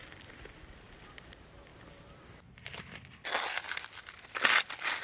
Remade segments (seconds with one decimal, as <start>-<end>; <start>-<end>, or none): none